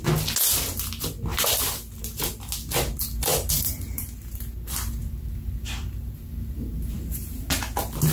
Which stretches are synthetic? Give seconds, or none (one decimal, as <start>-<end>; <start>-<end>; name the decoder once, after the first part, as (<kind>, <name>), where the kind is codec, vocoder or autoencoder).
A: 1.3-1.9 (vocoder, BigVGAN v2); 3.3-4.4; 5.0-7.5